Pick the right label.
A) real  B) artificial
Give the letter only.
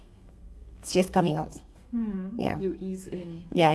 B